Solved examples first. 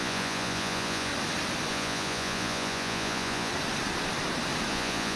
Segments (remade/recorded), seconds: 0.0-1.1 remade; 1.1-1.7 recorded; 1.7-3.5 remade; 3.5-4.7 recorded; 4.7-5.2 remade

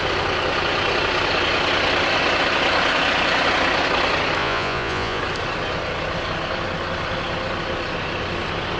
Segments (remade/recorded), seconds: 0.0-4.4 recorded; 4.4-5.2 remade; 5.2-8.8 recorded